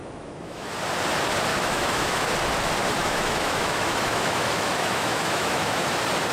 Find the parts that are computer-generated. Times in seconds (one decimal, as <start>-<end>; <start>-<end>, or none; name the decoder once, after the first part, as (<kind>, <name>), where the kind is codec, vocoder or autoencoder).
0.0-0.7 (autoencoder, DAC-VAE); 1.5-2.3; 3.0-5.8